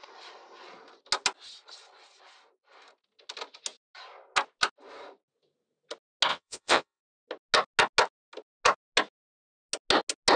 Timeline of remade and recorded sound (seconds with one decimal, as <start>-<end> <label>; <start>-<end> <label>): 0.0-6.3 recorded; 6.3-7.0 remade; 7.0-10.4 recorded